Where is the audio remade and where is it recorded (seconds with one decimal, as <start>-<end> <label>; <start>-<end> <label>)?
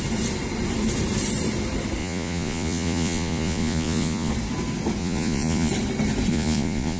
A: 0.0-2.0 recorded; 2.0-4.3 remade; 4.3-5.0 recorded; 5.0-5.7 remade; 5.7-6.3 recorded; 6.3-7.0 remade